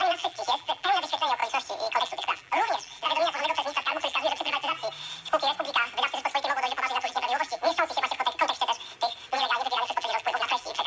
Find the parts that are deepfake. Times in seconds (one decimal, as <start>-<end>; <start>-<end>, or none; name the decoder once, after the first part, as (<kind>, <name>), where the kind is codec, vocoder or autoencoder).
0.0-1.4 (vocoder, BigVGAN v2); 2.0-4.8; 6.6-7.7; 9.3-10.9